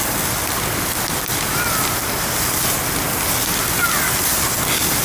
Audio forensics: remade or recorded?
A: recorded